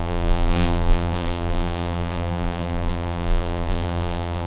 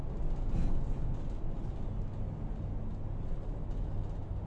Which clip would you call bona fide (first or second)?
second